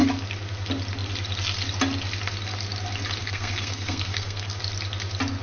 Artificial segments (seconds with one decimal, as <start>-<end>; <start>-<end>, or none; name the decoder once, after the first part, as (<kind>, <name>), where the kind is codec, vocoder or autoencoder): 3.2-4.6 (codec, SNAC)